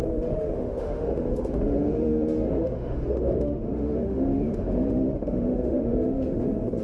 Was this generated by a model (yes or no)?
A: yes